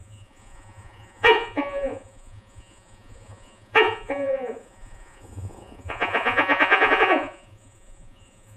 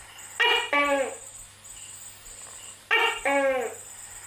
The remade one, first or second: first